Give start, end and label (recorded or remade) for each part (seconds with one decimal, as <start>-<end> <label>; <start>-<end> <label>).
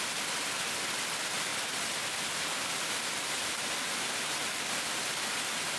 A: 0.0-5.8 recorded